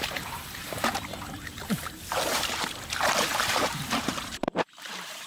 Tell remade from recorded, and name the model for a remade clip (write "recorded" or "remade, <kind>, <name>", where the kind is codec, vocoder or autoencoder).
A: remade, vocoder, BigVGAN v2